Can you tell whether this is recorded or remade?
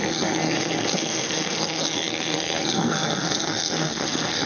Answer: remade